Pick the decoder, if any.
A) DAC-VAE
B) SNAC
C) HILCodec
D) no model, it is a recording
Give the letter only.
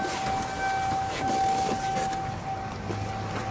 D